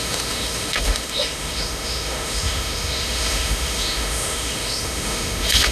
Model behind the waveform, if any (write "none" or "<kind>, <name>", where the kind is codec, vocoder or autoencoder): autoencoder, DAC-VAE